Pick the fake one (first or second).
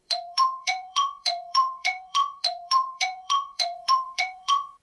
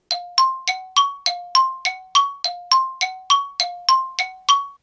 first